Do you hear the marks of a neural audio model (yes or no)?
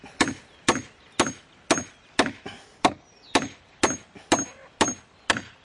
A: no